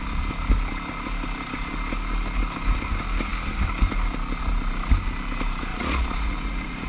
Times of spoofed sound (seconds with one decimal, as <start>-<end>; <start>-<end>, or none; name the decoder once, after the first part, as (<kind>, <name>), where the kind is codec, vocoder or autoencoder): 5.7-6.9 (vocoder, Vocos)